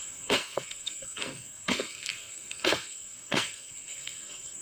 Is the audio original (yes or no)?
no